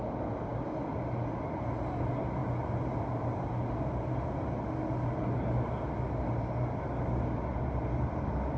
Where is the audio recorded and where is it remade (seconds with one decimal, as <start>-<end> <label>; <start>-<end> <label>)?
0.0-8.6 recorded